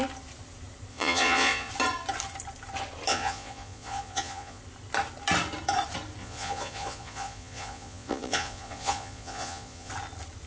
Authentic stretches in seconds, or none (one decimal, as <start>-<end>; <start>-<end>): 0.0-0.9; 1.7-3.1; 4.6-6.2; 9.9-10.5